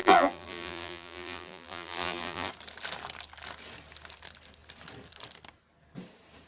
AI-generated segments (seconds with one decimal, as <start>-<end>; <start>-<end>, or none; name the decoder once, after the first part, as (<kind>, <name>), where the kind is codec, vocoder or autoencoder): 0.0-2.5 (vocoder, BigVGAN v2)